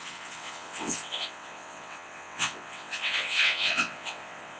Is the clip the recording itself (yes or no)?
no